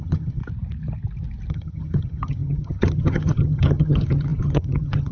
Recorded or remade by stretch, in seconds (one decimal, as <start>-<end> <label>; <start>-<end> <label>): 0.0-0.4 remade; 0.4-1.5 recorded; 1.5-5.1 remade